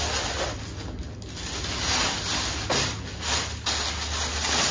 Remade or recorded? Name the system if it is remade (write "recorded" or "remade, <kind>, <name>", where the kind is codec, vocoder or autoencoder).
recorded